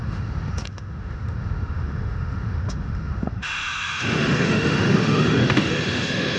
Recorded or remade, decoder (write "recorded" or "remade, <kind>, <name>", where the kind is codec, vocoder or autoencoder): remade, autoencoder, DAC-VAE